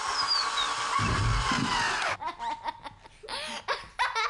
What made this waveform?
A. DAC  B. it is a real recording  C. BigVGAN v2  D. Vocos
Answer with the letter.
B